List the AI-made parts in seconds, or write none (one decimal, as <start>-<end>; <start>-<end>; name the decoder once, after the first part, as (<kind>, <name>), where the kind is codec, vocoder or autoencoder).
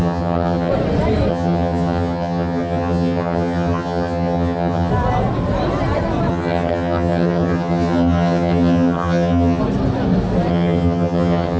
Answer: 0.0-0.7 (vocoder, HiFi-GAN); 1.3-4.9; 6.3-9.6; 10.5-11.6